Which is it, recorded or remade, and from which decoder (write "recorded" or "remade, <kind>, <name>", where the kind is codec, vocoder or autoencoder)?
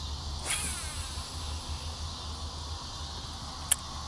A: recorded